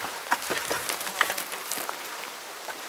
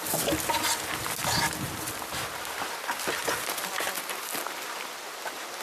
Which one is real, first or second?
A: second